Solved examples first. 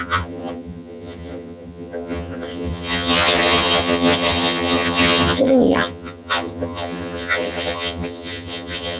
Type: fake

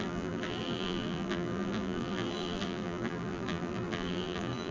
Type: fake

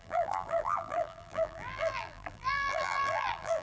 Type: fake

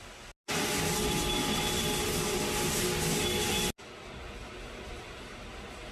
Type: real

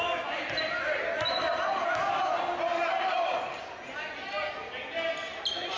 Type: real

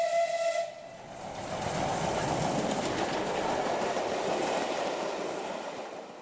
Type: real